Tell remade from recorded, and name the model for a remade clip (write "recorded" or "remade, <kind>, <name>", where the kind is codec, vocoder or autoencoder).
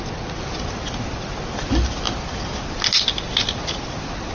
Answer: recorded